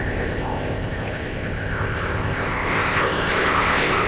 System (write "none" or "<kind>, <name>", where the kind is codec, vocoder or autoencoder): codec, ZipCodec